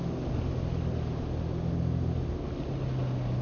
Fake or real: real